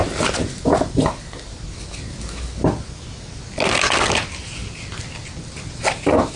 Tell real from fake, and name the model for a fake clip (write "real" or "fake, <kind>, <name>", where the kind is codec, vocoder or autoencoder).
real